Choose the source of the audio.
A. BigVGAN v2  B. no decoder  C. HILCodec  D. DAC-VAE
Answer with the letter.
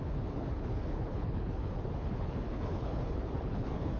C